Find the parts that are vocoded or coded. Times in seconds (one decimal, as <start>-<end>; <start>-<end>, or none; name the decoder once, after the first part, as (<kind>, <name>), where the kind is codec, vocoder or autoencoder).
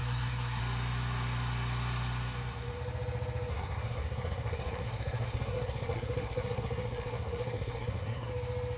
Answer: 0.0-0.6 (codec, SNAC); 3.5-8.3